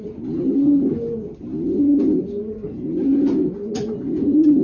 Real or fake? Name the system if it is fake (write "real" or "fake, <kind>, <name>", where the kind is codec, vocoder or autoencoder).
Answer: real